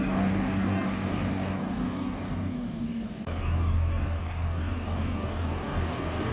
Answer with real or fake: fake